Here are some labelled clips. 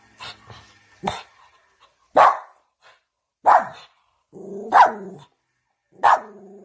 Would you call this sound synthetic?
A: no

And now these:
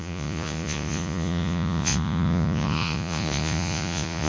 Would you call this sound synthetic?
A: yes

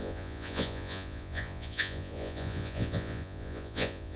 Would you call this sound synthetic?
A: yes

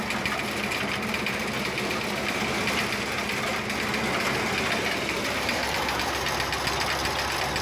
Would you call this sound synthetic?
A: no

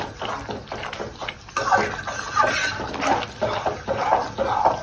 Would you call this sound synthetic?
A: no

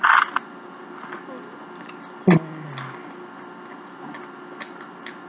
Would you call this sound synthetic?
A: no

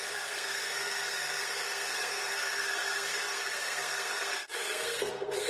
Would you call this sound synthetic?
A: yes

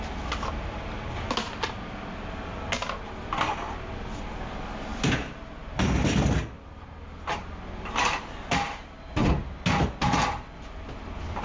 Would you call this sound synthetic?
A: no